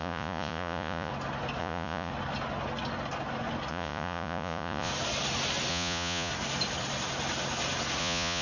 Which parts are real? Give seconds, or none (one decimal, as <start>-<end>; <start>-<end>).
1.1-1.6; 2.1-3.7; 4.9-5.7; 6.3-8.0